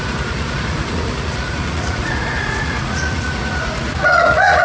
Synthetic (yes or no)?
yes